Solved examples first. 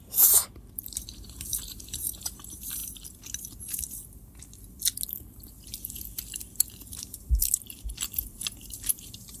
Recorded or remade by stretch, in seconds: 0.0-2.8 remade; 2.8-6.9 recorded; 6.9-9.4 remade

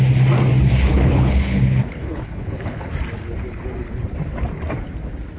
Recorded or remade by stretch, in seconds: 0.0-0.9 recorded; 0.9-2.9 remade; 2.9-5.4 recorded

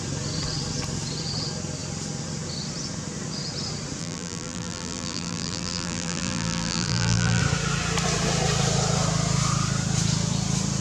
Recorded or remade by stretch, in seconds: 0.0-4.0 recorded; 4.0-7.4 remade; 7.4-10.8 recorded

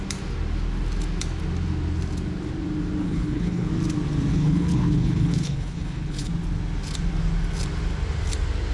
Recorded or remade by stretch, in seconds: 0.0-3.0 recorded; 3.0-3.7 remade; 3.7-4.3 recorded; 4.3-6.3 remade; 6.3-8.7 recorded

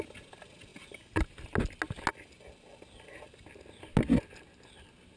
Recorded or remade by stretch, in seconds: 0.0-5.2 recorded

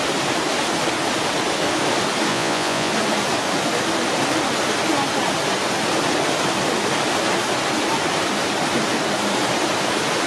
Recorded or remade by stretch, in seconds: 0.0-2.3 recorded; 2.3-2.9 remade; 2.9-10.3 recorded

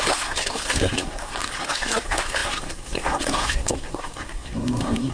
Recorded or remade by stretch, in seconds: 0.0-5.1 remade